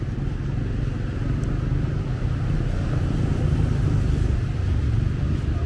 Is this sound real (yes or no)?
yes